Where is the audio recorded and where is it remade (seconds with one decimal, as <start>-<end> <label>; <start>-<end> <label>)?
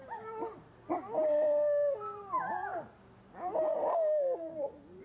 0.0-5.0 recorded